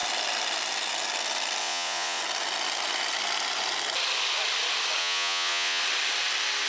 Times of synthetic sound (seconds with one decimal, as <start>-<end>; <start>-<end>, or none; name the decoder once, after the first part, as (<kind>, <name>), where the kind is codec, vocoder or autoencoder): 1.6-2.2 (vocoder, Vocos); 5.0-5.8